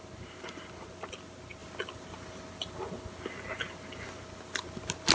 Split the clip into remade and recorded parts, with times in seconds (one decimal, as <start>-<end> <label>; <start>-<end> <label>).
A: 0.0-5.1 recorded